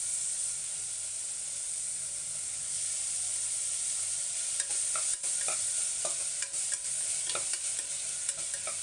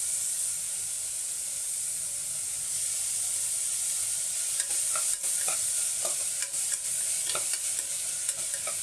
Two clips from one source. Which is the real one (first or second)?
first